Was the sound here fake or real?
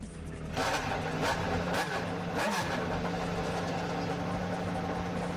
real